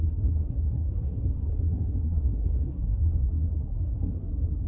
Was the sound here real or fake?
fake